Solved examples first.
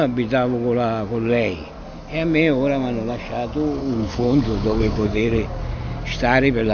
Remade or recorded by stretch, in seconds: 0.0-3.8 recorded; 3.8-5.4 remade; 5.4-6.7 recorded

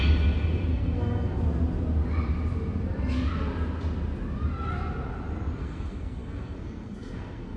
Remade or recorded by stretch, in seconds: 0.0-0.7 recorded; 0.7-1.4 remade; 1.4-5.6 recorded; 5.6-7.6 remade

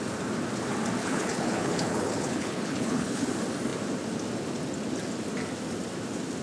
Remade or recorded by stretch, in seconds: 0.0-1.0 recorded; 1.0-3.3 remade; 3.3-6.4 recorded